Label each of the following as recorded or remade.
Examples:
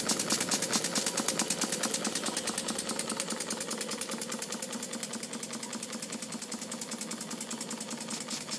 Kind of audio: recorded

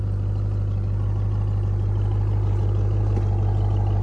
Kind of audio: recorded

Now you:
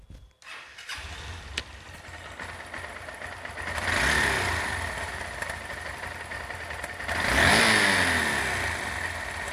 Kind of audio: recorded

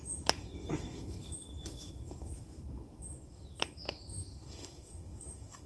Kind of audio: remade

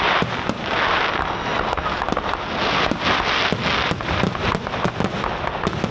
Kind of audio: recorded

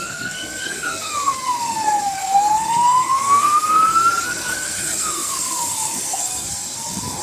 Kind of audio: remade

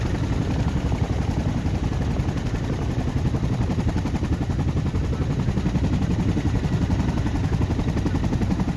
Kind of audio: recorded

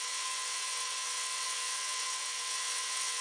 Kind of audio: remade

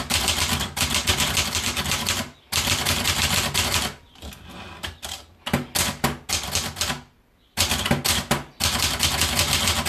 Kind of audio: recorded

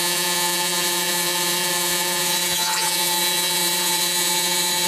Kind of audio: remade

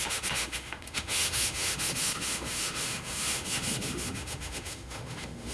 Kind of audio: remade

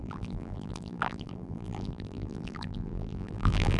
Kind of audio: remade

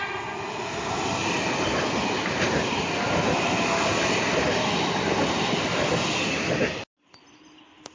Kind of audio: recorded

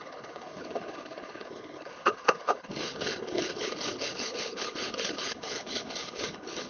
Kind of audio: remade